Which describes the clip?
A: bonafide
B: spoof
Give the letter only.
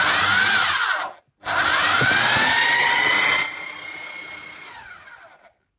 A